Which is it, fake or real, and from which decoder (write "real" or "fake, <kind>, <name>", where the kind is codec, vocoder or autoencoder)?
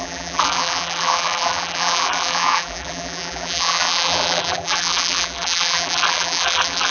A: fake, vocoder, BigVGAN v2